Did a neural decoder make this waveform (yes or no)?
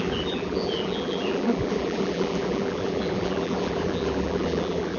yes